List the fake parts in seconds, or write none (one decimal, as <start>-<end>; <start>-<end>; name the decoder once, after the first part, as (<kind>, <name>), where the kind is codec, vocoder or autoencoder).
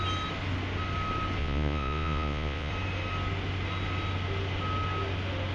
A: 1.4-2.7 (vocoder, Vocos)